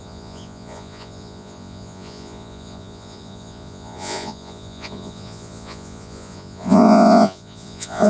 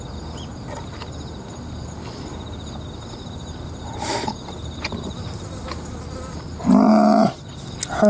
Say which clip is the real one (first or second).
second